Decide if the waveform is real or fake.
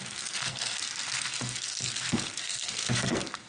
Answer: fake